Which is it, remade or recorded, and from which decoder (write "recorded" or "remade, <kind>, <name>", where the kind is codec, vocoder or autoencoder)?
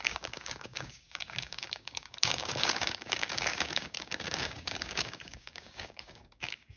remade, codec, DAC